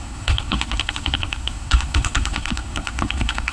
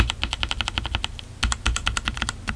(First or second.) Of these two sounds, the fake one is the first